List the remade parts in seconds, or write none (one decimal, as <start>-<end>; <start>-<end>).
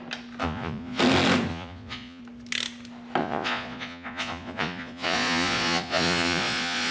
0.4-1.0; 1.5-2.2; 3.2-6.9